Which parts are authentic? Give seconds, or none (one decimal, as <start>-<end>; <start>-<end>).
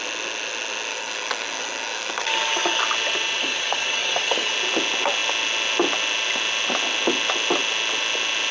0.0-0.9; 2.8-3.4; 4.5-8.5